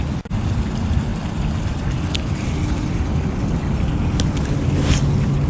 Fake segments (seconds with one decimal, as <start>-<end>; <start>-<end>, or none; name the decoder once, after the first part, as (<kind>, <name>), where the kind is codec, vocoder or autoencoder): none